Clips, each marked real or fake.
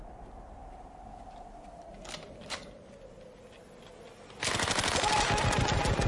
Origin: real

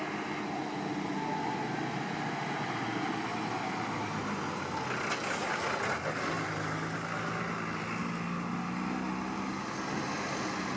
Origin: real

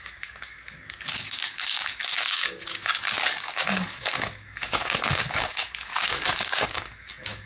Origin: fake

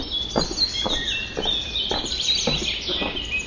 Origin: real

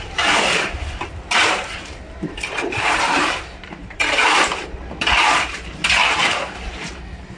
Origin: fake